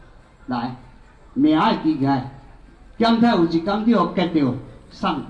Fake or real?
real